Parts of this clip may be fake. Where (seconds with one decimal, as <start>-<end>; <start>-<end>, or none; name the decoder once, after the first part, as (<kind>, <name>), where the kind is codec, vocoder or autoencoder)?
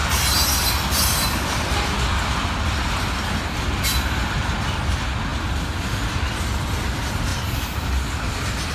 none